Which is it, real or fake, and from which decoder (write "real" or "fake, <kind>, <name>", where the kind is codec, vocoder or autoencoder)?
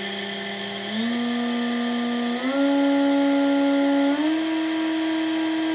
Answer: real